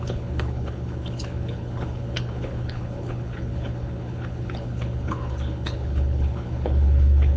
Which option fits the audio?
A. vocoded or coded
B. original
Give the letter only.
A